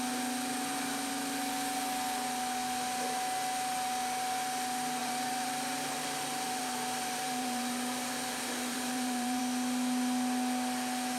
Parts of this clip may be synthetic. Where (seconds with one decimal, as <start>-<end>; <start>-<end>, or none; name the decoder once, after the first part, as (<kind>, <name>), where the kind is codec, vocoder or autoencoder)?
5.0-9.4 (vocoder, BigVGAN v2)